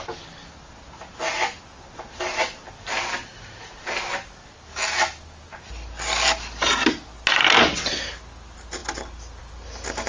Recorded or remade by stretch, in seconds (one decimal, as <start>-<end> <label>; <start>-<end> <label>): 0.0-10.1 recorded